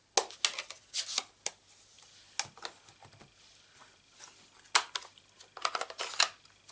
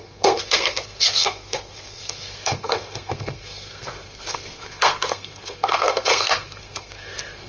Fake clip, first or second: second